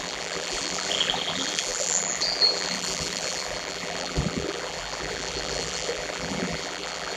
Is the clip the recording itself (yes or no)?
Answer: no